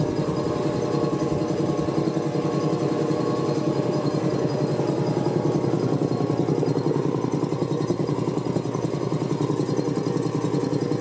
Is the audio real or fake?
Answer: real